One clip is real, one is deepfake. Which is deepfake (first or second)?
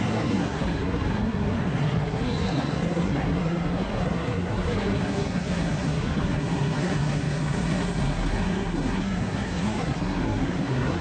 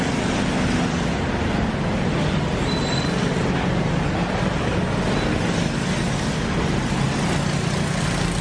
first